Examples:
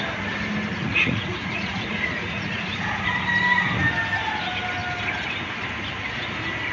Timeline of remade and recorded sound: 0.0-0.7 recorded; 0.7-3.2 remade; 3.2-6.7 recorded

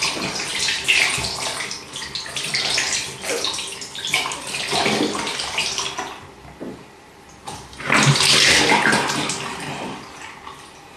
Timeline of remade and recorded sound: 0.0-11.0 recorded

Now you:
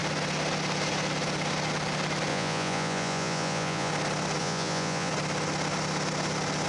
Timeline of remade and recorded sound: 0.0-2.3 recorded; 2.3-3.9 remade; 3.9-4.4 recorded; 4.4-5.1 remade; 5.1-6.7 recorded

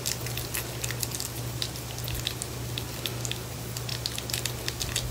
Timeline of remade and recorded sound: 0.0-5.1 recorded